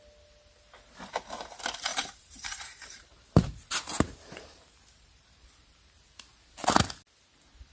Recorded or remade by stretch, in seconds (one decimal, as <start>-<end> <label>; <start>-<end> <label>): 0.0-1.9 recorded; 1.9-5.5 remade; 5.5-7.7 recorded